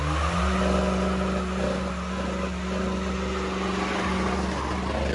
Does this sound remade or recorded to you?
recorded